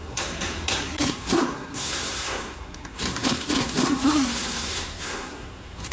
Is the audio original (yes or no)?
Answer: no